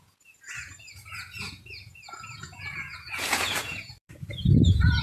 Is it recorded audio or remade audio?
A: remade